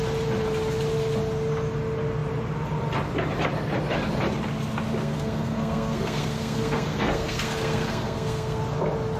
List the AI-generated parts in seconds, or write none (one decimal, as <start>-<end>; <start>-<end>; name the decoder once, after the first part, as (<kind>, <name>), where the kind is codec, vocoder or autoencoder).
5.0-8.6 (codec, SNAC)